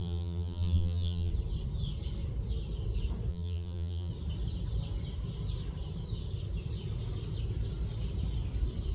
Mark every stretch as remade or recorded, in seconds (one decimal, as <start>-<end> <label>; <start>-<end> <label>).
0.0-1.3 remade; 1.3-3.3 recorded; 3.3-4.1 remade; 4.1-8.9 recorded